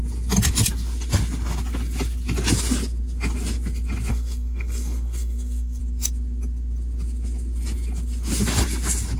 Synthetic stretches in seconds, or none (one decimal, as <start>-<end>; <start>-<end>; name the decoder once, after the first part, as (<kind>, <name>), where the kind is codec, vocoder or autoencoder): 4.1-5.8 (codec, SNAC)